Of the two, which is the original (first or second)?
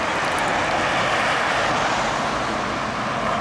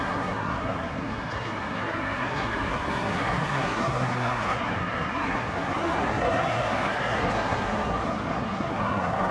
first